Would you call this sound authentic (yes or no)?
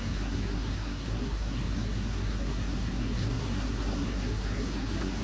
no